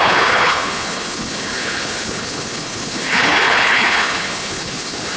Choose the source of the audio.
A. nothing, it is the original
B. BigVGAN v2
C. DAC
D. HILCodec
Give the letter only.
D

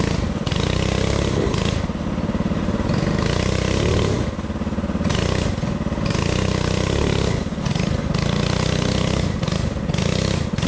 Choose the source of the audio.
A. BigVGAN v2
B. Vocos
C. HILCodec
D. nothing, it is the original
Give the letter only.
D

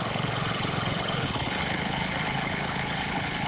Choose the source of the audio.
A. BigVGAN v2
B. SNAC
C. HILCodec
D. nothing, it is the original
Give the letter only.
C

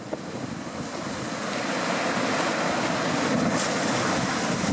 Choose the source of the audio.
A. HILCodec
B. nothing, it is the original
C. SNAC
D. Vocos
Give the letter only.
B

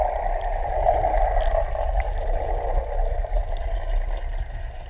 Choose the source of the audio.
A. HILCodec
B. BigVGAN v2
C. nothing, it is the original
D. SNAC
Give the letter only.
C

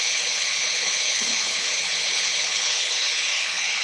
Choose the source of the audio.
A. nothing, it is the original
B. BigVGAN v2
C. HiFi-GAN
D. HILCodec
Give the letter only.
D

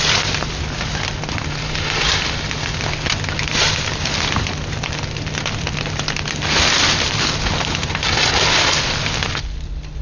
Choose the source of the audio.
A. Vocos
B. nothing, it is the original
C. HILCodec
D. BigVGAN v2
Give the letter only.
B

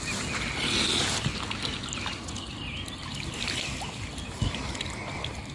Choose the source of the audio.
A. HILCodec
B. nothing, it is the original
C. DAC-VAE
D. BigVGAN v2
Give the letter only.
B